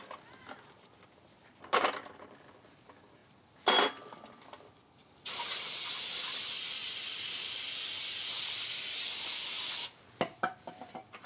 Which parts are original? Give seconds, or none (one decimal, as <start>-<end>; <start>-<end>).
0.0-11.3